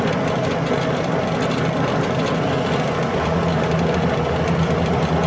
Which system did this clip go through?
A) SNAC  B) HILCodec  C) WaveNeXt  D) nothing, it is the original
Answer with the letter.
D